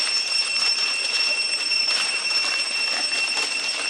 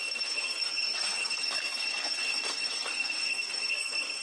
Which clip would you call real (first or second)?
first